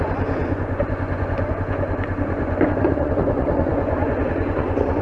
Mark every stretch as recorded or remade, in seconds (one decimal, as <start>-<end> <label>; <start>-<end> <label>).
0.0-5.0 remade

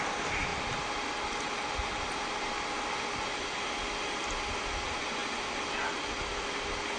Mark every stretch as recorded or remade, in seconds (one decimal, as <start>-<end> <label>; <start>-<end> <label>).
0.0-7.0 recorded

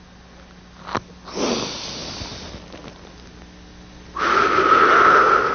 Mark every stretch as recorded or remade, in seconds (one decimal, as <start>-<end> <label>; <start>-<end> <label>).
0.0-5.5 recorded